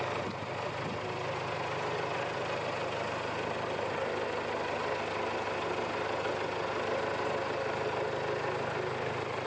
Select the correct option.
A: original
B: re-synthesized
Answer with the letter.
A